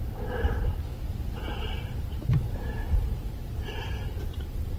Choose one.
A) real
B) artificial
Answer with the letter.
B